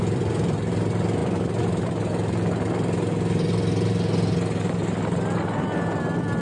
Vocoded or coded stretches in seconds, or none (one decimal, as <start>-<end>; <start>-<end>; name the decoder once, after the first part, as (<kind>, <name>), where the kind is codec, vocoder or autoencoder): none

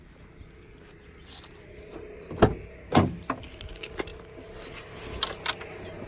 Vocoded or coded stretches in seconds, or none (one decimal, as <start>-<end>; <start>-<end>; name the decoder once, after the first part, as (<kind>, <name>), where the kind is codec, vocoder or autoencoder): none

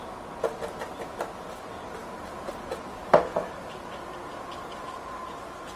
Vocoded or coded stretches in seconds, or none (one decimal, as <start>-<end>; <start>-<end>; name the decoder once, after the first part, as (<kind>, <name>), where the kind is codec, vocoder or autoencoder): none

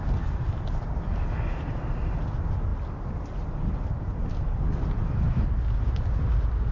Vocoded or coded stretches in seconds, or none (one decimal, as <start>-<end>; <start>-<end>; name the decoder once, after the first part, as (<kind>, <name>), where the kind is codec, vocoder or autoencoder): none

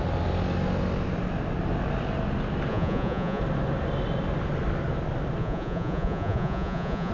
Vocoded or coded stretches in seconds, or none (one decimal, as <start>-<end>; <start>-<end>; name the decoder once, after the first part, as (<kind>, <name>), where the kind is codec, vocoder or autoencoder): 2.7-3.4 (vocoder, Vocos); 5.4-7.1

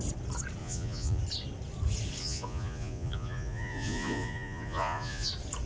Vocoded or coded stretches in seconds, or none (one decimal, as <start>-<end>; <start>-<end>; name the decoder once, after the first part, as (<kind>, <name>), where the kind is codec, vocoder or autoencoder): 0.6-1.2 (vocoder, Vocos); 2.2-5.3

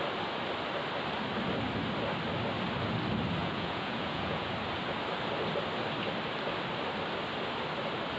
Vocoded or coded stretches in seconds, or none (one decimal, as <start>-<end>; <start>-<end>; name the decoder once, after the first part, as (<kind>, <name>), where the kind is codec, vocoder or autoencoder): 3.4-4.5 (vocoder, Vocos)